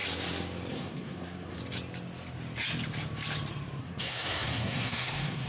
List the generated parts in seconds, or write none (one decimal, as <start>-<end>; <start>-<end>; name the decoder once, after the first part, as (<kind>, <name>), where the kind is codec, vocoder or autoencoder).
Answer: 0.7-1.6 (codec, SNAC); 3.8-5.5